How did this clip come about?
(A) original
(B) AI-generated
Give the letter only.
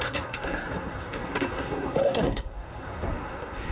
B